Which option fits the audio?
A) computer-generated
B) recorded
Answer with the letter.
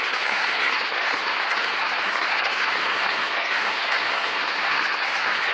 A